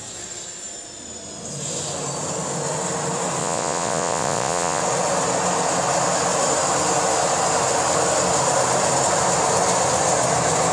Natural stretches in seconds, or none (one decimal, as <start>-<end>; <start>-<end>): 0.0-3.4; 4.8-10.7